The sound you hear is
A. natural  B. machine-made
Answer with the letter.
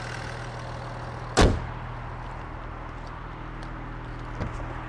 A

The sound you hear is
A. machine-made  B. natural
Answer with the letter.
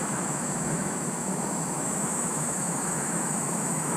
A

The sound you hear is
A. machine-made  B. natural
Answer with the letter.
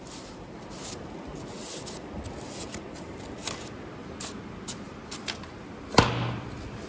B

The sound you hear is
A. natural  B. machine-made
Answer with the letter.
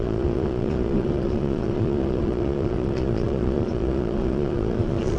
B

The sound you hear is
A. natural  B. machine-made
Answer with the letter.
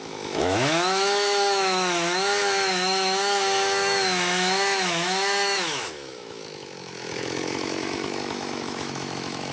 B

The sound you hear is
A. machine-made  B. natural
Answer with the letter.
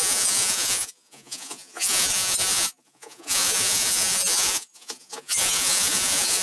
A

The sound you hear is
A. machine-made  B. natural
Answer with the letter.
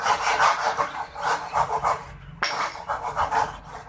B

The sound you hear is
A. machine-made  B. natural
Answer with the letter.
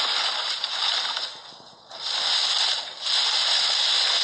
B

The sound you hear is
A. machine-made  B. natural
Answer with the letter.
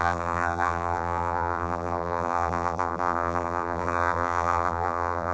A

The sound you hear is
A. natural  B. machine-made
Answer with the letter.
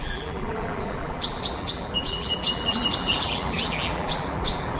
B